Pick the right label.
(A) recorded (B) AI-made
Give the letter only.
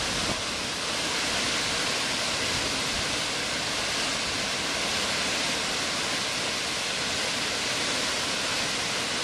A